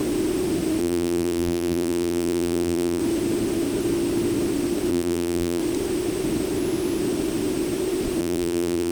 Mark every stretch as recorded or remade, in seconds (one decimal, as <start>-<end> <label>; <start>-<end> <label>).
0.0-0.8 recorded; 0.8-3.0 remade; 3.0-4.9 recorded; 4.9-5.6 remade; 5.6-8.2 recorded; 8.2-8.9 remade